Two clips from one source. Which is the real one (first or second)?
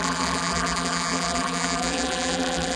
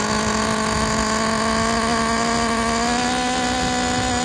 second